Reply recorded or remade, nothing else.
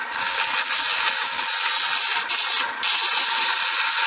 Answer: recorded